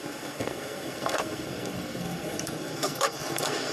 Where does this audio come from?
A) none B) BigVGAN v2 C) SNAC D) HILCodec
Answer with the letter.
C